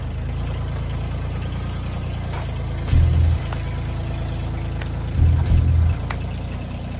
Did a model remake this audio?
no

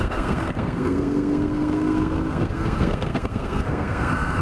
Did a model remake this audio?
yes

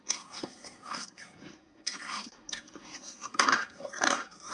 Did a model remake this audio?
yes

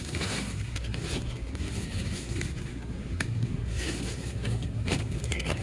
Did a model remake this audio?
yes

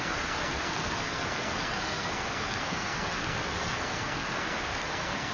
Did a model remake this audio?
yes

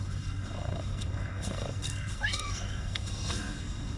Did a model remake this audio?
yes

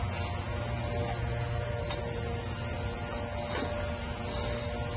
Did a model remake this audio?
no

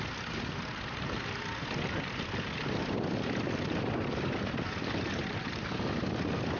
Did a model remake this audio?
no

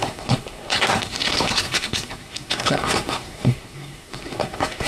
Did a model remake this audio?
yes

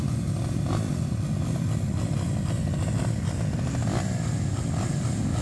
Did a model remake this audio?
no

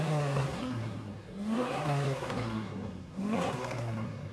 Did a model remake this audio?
yes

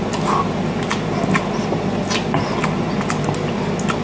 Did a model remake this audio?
no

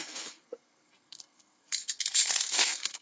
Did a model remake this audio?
yes